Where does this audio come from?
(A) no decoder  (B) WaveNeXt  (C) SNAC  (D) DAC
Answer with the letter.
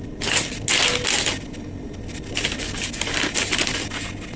A